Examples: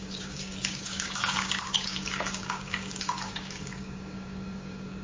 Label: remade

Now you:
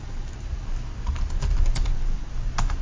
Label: recorded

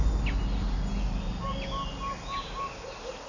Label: recorded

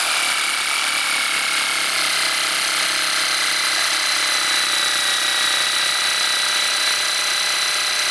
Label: recorded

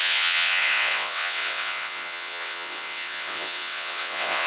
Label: remade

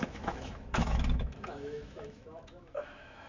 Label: remade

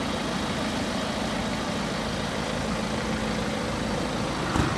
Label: recorded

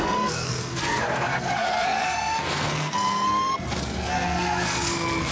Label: remade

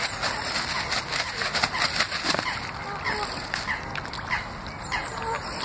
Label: recorded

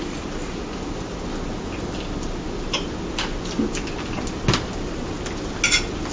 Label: recorded